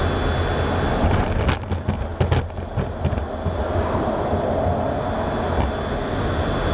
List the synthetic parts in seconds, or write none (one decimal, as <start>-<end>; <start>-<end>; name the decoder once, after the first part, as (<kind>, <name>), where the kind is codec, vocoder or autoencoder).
none